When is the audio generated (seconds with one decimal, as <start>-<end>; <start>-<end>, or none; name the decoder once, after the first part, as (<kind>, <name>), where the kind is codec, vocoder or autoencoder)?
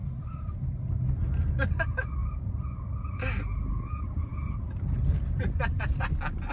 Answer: 0.0-0.7 (vocoder, BigVGAN v2)